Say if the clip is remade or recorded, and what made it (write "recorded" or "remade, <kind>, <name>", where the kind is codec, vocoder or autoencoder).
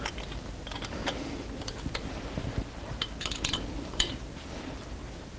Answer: recorded